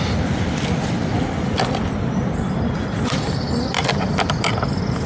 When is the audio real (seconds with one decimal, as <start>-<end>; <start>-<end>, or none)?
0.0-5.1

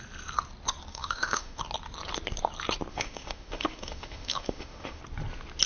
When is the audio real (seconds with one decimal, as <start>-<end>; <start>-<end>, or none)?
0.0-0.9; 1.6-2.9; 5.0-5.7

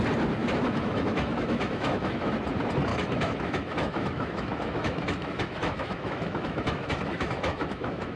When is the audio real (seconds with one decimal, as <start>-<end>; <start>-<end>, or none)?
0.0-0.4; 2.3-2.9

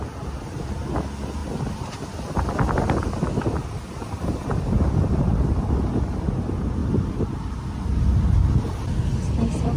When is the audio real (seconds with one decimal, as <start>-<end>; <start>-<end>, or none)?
0.0-9.8

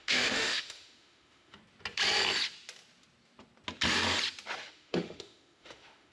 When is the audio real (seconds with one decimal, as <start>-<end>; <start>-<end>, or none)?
1.6-4.7

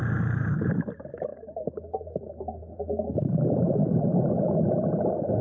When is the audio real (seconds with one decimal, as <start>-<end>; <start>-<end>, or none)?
0.0-1.3; 4.5-5.4